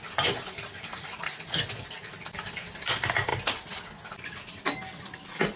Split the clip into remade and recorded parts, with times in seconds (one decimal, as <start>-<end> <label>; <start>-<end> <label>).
0.0-5.6 recorded